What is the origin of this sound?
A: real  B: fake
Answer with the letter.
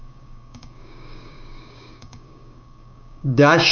B